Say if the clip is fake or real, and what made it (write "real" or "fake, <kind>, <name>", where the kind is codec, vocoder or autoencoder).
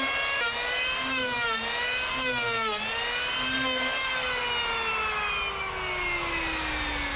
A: real